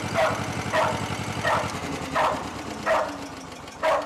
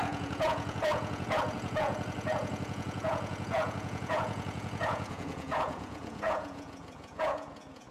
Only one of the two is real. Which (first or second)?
first